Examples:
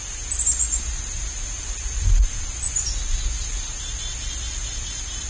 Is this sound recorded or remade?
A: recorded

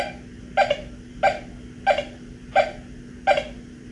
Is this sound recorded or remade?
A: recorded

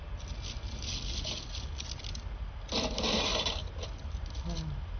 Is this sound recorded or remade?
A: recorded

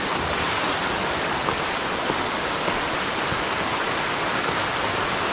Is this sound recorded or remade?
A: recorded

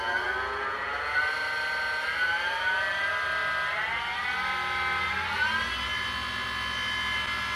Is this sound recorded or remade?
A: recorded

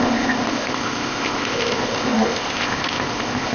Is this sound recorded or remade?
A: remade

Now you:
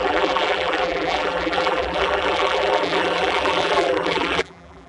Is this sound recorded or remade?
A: remade